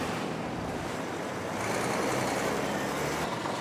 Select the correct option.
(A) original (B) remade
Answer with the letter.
A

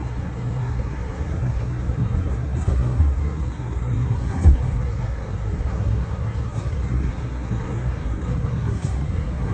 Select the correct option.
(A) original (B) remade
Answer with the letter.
B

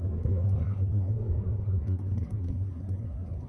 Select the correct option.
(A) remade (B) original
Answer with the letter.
A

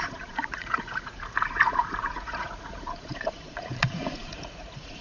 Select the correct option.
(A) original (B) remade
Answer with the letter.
B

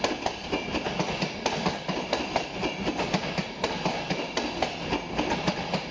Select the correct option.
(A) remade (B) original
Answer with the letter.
B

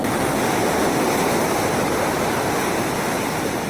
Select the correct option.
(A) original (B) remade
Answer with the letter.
A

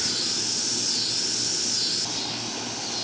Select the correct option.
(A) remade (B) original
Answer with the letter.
B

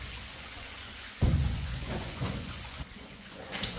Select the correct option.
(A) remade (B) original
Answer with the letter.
A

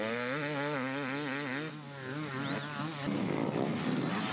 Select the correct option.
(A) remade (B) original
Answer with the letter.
B